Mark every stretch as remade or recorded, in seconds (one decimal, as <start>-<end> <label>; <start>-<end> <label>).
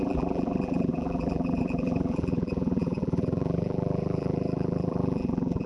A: 0.0-5.7 remade